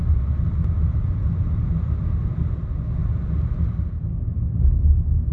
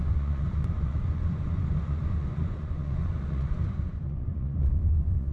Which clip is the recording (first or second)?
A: first